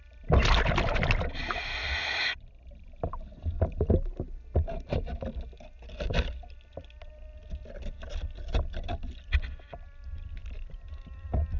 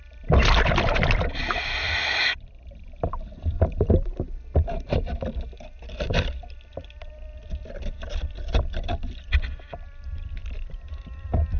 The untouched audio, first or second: first